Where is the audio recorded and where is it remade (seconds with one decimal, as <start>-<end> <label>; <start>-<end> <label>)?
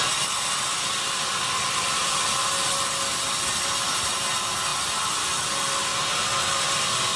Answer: 0.0-7.2 recorded